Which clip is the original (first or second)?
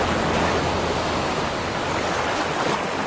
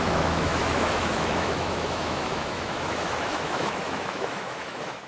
first